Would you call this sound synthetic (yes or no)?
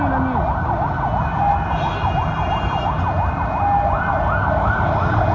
no